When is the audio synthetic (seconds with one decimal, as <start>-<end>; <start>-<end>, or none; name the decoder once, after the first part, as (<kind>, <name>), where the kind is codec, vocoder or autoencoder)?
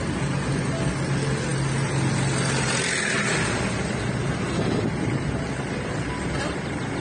none